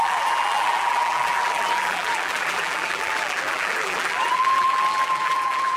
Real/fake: fake